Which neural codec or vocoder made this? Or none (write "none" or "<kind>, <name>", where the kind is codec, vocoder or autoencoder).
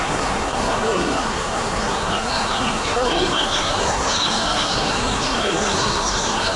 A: codec, SNAC